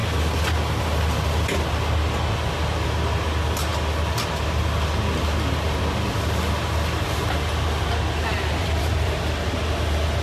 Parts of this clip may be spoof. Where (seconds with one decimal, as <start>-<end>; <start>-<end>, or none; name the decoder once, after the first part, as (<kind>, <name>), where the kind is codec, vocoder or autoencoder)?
8.6-9.2 (vocoder, BigVGAN v2)